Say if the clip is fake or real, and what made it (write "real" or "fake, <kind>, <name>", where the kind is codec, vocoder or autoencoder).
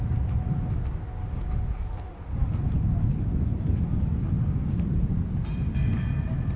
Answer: real